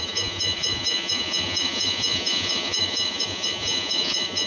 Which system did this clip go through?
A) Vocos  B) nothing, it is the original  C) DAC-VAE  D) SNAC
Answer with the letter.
A